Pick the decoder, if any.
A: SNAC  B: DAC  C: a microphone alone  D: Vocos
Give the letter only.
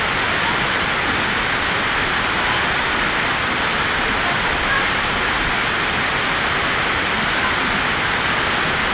C